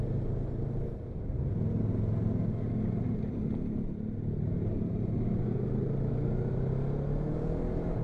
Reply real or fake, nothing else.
real